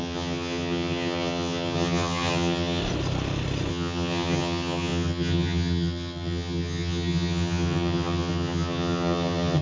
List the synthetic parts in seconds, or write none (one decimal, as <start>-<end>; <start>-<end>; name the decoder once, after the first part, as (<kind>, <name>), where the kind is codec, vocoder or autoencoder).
0.0-2.8 (vocoder, HiFi-GAN); 3.7-9.6